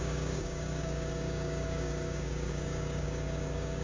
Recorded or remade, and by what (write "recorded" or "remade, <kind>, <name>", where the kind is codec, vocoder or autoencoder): remade, codec, DAC